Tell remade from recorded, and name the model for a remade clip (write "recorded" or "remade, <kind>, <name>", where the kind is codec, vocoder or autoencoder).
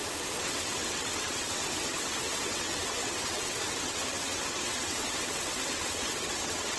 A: remade, vocoder, WaveNeXt